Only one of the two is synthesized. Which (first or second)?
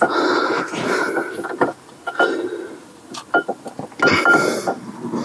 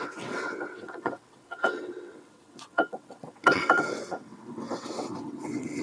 second